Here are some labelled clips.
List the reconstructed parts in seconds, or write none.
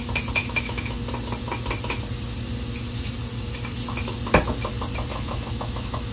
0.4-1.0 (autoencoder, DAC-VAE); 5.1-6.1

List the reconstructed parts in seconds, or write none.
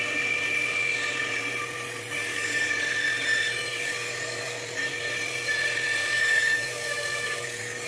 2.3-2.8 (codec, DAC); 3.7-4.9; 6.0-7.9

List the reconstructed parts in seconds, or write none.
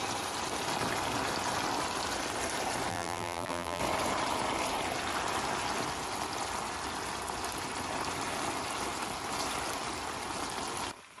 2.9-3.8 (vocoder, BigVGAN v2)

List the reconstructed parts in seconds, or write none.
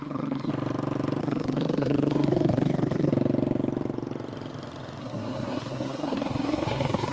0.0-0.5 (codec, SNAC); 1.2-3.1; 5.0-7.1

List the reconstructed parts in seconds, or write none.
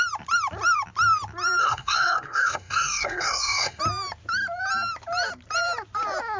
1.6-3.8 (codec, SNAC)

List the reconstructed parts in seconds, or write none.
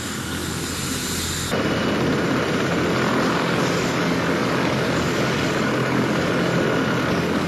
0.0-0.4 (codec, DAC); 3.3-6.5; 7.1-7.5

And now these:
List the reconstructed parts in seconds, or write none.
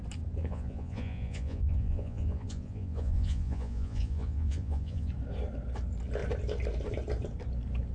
0.4-5.1 (vocoder, Vocos)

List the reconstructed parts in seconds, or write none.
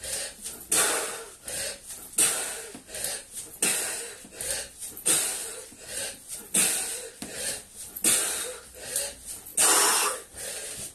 none